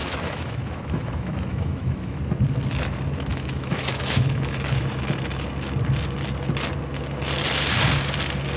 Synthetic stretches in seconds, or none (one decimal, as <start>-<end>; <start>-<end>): 0.0-2.2; 3.3-5.0

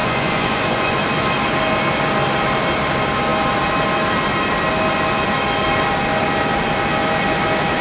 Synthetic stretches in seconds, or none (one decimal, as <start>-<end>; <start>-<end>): 0.0-1.0

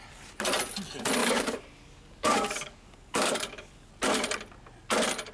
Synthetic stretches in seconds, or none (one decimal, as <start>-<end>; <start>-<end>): 1.2-3.9

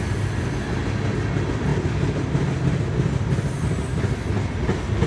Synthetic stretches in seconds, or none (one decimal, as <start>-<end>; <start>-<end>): none